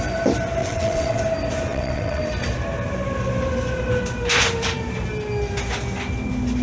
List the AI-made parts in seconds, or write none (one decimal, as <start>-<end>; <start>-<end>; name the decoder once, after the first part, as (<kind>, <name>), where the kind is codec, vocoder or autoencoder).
0.6-1.2 (vocoder, WaveNeXt); 1.7-2.2